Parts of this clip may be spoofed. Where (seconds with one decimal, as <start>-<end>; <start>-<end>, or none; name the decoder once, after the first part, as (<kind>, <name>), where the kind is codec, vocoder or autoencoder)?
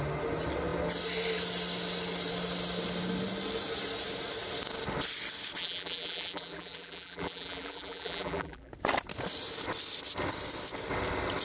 5.6-8.7 (vocoder, BigVGAN v2)